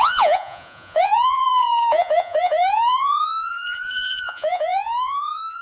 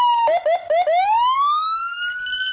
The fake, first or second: first